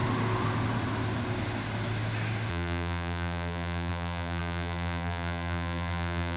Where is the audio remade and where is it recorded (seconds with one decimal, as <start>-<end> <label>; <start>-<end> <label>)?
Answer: 0.0-2.5 recorded; 2.5-6.4 remade